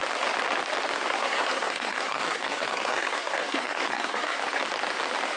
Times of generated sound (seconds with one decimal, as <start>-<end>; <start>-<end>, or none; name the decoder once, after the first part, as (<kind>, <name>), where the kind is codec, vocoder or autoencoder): 1.2-4.4 (codec, SNAC)